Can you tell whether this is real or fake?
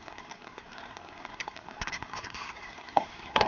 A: fake